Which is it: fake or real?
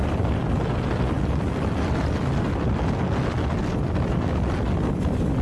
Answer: real